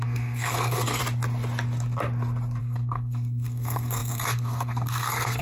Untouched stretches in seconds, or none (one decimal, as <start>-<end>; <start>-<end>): 1.0-2.6